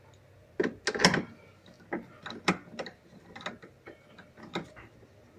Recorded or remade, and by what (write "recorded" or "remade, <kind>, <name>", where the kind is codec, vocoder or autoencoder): recorded